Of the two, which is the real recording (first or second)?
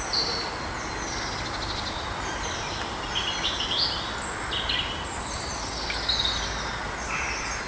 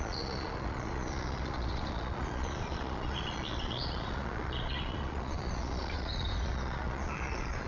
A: first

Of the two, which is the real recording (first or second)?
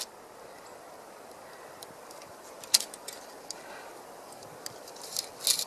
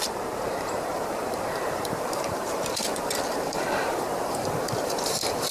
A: first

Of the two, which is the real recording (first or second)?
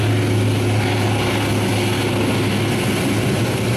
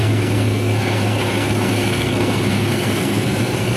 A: first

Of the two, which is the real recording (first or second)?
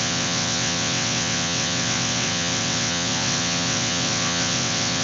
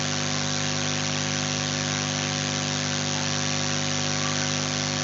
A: second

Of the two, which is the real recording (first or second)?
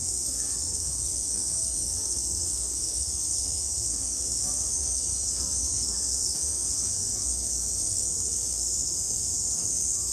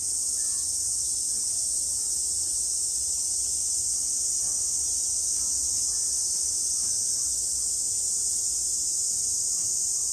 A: second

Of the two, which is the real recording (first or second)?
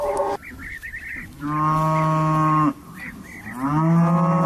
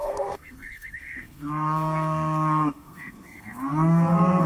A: first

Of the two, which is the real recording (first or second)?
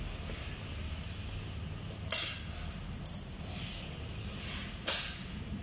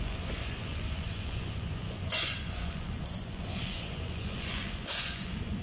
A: first